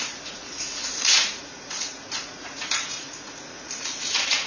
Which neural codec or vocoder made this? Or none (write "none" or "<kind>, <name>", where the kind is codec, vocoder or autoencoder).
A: vocoder, Vocos